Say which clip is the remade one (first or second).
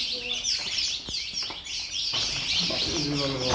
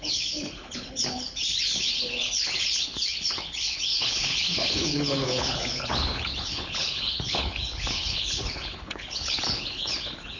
second